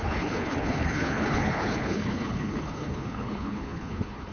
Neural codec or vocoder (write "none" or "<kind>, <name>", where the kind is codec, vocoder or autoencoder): codec, HILCodec